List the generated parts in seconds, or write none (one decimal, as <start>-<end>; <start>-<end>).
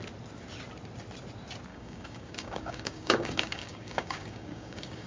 1.7-5.1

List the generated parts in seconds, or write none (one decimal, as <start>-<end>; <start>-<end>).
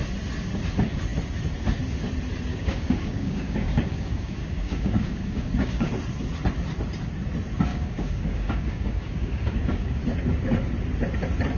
2.5-5.9; 7.7-10.0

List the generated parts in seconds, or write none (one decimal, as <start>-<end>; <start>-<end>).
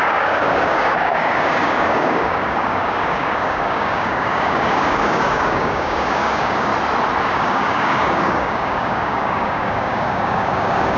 0.0-6.7; 7.2-11.0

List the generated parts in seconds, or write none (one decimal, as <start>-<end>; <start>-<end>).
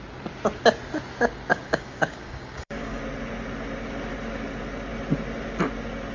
1.5-3.0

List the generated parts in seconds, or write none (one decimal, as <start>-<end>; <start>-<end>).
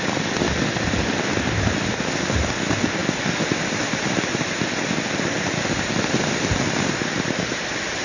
none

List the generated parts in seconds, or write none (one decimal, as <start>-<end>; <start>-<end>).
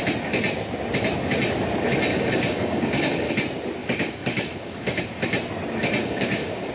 2.1-3.3; 3.8-5.0; 6.0-6.7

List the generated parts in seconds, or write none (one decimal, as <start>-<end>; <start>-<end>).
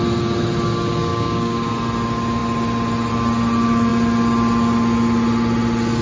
1.1-1.7